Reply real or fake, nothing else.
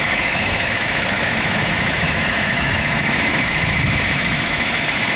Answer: fake